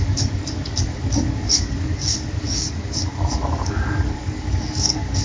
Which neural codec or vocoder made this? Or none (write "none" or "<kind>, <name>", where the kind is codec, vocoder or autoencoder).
codec, DAC